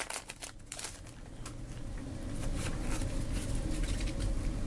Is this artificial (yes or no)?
no